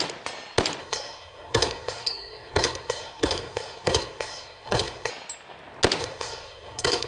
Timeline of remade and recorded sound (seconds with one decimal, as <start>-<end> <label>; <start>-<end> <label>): 0.0-0.8 recorded; 0.8-5.1 remade; 5.1-6.0 recorded; 6.0-7.1 remade

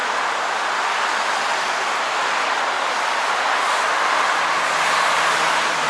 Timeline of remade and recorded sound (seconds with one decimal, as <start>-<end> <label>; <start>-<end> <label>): 0.0-5.9 recorded

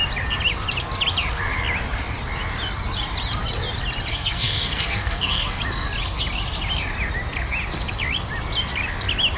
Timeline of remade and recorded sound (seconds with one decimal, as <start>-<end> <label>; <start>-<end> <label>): 0.0-4.1 recorded; 4.1-5.6 remade; 5.6-9.4 recorded

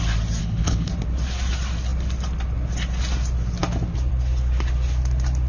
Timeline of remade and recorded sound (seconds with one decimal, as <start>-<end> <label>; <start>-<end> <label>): 0.0-0.4 recorded; 0.4-0.9 remade; 0.9-5.5 recorded

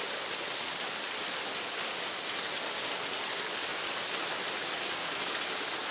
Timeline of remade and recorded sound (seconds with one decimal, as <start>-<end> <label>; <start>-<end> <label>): 0.0-5.9 recorded

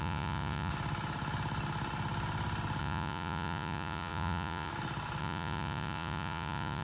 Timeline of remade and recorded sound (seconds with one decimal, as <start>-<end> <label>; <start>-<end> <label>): 0.0-0.7 remade; 0.7-2.8 recorded; 2.8-4.7 remade; 4.7-5.2 recorded; 5.2-6.8 remade

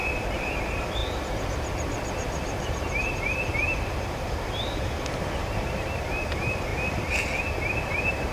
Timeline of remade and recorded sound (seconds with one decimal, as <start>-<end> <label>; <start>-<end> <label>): 0.0-6.7 remade; 6.7-7.8 recorded; 7.8-8.3 remade